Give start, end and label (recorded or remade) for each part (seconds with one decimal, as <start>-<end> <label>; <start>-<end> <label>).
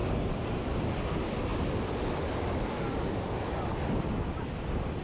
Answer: 0.0-0.8 remade; 0.8-1.5 recorded; 1.5-3.7 remade; 3.7-5.0 recorded